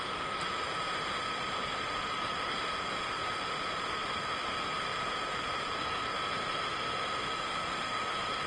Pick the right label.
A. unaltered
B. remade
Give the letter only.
A